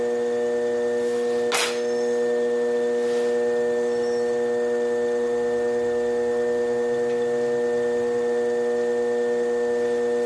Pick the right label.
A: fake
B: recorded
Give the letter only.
B